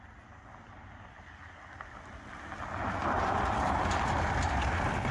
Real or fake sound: real